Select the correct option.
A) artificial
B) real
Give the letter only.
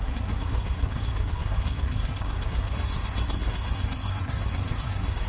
A